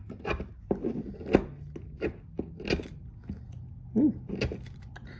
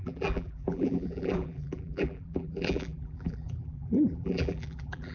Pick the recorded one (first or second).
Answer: first